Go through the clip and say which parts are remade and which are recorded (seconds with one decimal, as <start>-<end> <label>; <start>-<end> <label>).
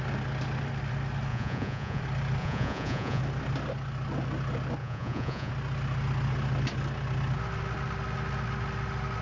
0.0-1.3 recorded; 1.3-2.0 remade; 2.0-2.4 recorded; 2.4-3.2 remade; 3.2-4.8 recorded; 4.8-5.5 remade; 5.5-9.2 recorded